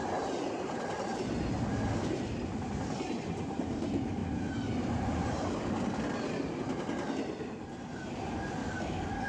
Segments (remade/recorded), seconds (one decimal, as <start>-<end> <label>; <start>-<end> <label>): 0.0-8.6 recorded; 8.6-9.3 remade